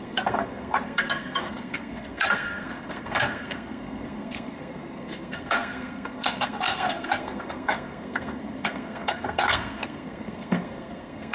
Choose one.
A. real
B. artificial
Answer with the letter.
B